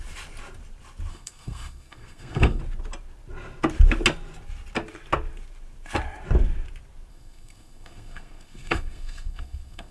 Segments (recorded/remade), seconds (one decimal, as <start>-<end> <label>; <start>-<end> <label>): 0.0-1.1 recorded; 1.1-2.6 remade; 2.6-7.1 recorded; 7.1-9.9 remade